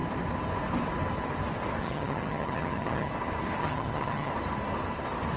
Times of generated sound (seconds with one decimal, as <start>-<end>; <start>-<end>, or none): 1.8-3.1; 3.6-4.3